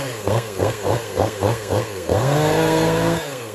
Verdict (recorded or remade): remade